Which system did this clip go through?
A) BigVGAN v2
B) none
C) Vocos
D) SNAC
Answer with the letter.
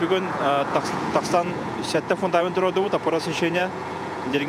C